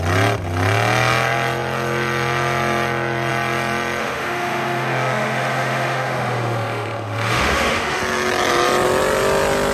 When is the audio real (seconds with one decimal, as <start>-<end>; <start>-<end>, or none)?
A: 0.0-4.0; 8.0-9.7